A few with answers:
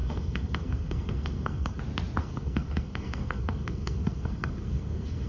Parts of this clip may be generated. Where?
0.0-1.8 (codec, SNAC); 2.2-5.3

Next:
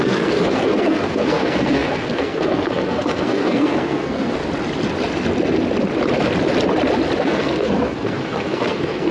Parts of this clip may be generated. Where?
0.0-4.4 (codec, SNAC); 7.2-9.1

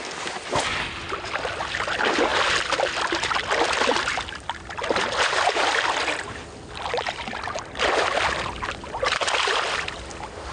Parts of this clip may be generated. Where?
none